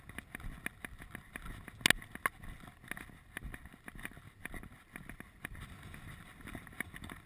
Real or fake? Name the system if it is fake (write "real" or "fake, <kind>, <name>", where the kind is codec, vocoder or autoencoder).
real